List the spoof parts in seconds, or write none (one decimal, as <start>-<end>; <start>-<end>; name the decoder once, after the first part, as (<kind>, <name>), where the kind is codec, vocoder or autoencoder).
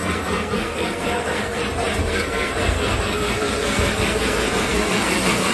0.0-1.6 (codec, SNAC); 2.0-5.5